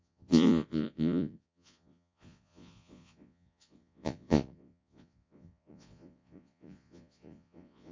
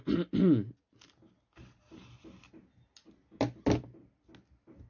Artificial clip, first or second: first